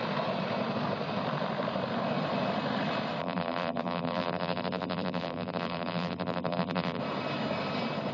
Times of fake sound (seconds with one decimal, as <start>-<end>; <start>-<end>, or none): 3.2-7.0